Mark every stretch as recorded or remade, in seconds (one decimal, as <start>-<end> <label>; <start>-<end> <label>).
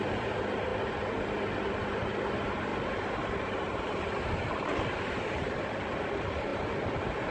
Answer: 0.0-0.7 remade; 0.7-1.7 recorded; 1.7-2.7 remade; 2.7-5.2 recorded; 5.2-7.3 remade